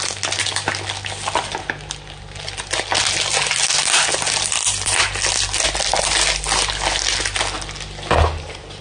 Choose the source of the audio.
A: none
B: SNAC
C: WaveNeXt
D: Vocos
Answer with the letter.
A